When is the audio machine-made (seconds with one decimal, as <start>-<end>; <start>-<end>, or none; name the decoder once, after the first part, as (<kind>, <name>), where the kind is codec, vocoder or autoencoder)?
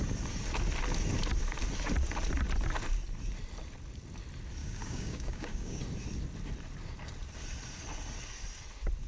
4.6-5.8 (codec, DAC)